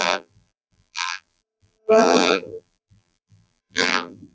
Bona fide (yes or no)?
no